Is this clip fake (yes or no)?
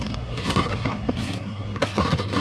yes